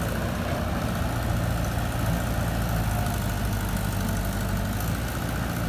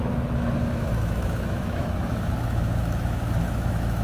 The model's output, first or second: second